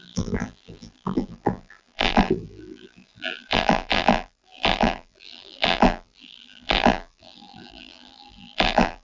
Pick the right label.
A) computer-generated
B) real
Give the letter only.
A